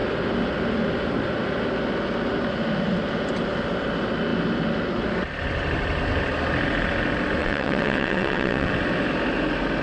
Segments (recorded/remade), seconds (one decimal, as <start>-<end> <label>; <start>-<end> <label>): 0.0-7.4 recorded; 7.4-8.7 remade; 8.7-9.8 recorded